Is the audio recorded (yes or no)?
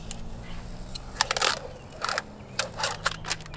yes